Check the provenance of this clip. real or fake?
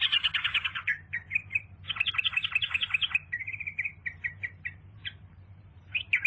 fake